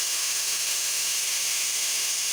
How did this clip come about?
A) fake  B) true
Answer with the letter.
A